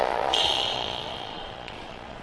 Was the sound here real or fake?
fake